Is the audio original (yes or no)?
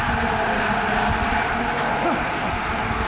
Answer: yes